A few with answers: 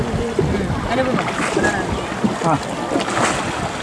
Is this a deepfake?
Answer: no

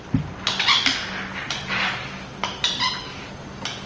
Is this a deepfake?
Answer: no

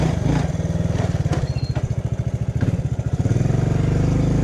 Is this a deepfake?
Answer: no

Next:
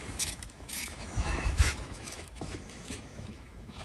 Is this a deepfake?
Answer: yes